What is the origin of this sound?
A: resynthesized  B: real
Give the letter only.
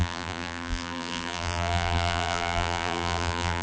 A